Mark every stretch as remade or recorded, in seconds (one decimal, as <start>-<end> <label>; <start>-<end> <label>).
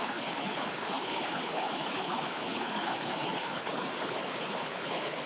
0.0-5.3 remade